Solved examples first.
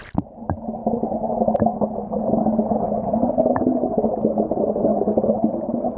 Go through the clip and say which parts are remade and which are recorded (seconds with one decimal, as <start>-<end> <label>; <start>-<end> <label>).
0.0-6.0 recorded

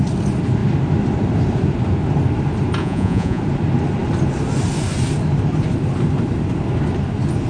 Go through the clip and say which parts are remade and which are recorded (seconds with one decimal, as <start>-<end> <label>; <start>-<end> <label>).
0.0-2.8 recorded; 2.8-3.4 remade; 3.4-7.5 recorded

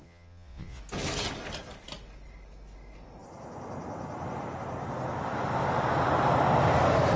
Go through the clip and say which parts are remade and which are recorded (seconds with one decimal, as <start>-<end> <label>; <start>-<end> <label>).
0.0-0.8 remade; 0.8-7.2 recorded

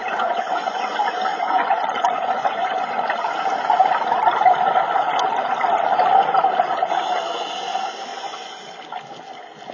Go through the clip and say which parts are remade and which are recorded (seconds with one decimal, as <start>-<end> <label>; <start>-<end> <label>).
0.0-0.8 remade; 0.8-1.3 recorded; 1.3-2.9 remade; 2.9-8.1 recorded; 8.1-8.6 remade; 8.6-9.7 recorded

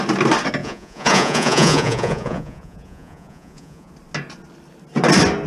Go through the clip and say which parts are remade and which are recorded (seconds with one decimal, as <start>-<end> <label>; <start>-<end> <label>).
0.0-0.6 recorded; 0.6-3.9 remade; 3.9-5.5 recorded

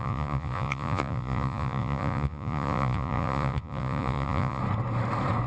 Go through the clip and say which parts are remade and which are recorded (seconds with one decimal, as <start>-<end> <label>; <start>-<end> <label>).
0.0-4.6 remade; 4.6-5.5 recorded

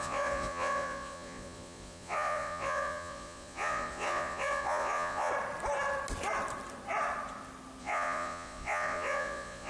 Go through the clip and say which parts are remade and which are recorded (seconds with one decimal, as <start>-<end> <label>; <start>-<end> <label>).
0.0-5.3 remade; 5.3-7.8 recorded; 7.8-9.7 remade